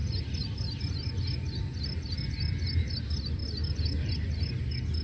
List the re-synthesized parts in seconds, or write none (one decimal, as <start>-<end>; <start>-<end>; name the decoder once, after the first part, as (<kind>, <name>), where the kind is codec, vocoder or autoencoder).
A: none

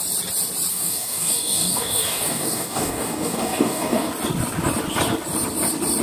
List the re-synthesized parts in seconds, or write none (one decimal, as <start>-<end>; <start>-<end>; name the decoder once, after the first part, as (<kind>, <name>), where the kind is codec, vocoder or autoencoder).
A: 0.7-4.1 (codec, DAC)

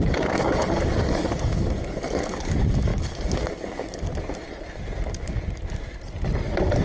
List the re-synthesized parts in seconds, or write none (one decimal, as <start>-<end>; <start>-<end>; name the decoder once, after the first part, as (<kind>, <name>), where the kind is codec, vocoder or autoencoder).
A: 0.0-4.1 (codec, DAC)

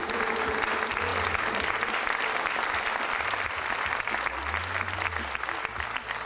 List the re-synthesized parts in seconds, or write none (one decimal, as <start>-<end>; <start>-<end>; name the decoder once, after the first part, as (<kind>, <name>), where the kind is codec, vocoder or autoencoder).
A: none